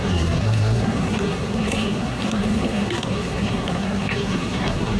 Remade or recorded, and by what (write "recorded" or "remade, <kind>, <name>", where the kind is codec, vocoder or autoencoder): remade, codec, SNAC